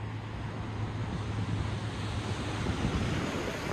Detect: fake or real real